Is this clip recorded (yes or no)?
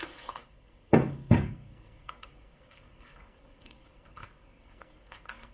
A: no